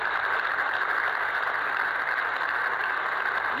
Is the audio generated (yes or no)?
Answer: no